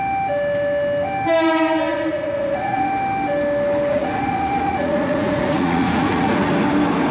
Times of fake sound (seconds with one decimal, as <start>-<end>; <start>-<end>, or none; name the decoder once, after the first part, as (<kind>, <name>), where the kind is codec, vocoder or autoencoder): 1.9-2.9 (vocoder, Vocos); 3.9-6.5